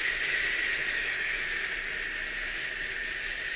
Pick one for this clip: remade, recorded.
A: recorded